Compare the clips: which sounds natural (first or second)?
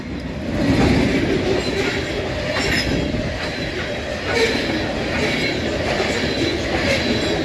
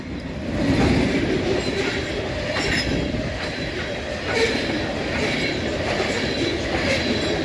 first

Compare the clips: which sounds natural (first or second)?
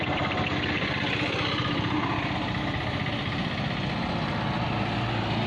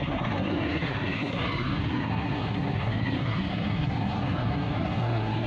first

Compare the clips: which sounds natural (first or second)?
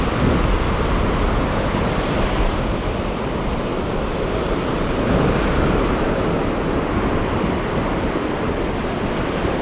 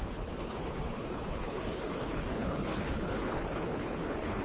first